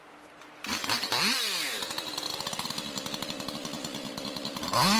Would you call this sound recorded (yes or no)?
yes